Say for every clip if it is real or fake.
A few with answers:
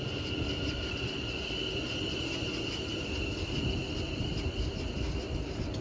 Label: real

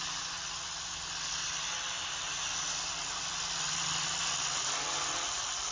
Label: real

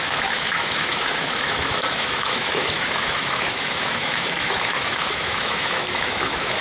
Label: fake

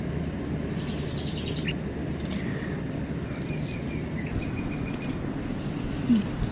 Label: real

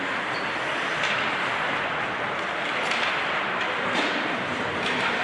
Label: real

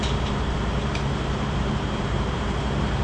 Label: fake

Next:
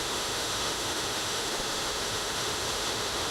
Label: fake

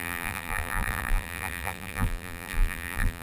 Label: fake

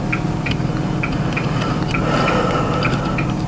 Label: fake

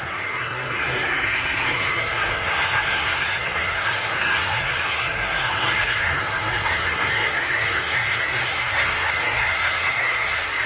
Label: fake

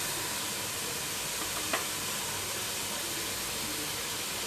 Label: fake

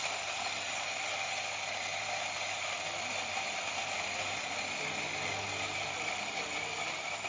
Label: real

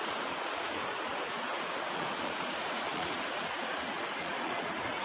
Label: fake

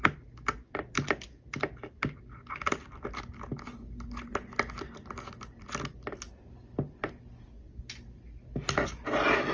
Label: real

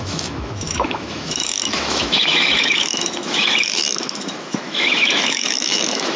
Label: fake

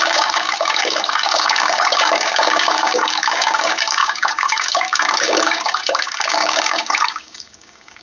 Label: fake